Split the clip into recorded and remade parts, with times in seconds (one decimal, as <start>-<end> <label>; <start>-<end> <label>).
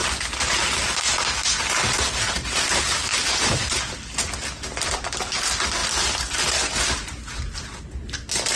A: 0.0-8.6 recorded